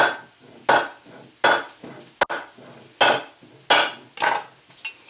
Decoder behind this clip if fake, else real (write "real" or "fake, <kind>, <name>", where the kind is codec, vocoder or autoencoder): real